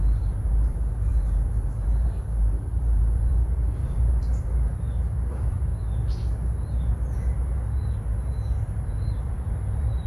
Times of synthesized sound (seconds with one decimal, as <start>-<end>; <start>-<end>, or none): 0.0-5.7; 9.2-10.1